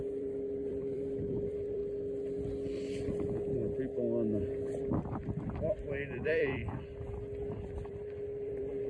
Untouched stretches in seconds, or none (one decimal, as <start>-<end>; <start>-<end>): 1.8-5.4; 6.6-7.5